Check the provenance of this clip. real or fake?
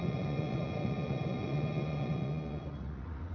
fake